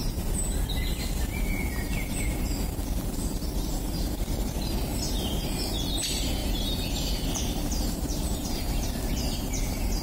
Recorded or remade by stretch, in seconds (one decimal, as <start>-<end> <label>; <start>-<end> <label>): 0.0-0.6 remade; 0.6-6.4 recorded; 6.4-8.9 remade; 8.9-10.0 recorded